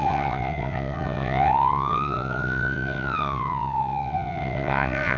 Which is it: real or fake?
fake